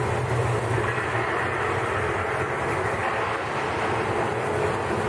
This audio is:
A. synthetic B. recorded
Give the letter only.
B